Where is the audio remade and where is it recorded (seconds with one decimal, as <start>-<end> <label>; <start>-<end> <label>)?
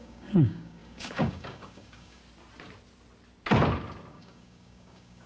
0.0-2.2 remade; 2.2-4.1 recorded; 4.1-5.3 remade